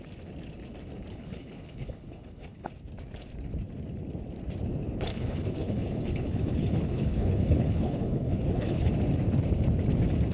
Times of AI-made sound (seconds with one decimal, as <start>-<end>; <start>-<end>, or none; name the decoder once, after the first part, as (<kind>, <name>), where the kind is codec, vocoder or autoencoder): 1.1-2.7 (codec, HILCodec); 5.1-8.9